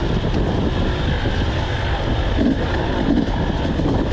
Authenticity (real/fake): real